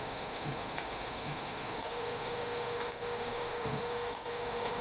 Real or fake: fake